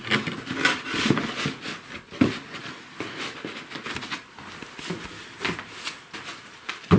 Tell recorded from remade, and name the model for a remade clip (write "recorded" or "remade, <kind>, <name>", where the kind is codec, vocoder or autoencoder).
recorded